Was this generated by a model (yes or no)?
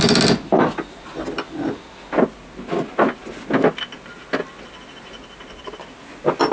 no